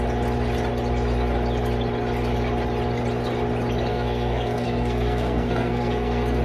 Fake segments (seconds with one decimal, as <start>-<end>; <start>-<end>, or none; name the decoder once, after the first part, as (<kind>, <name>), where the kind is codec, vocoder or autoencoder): 3.9-6.4 (codec, SNAC)